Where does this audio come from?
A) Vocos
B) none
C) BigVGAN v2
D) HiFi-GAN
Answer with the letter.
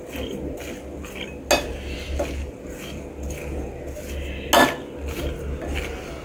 B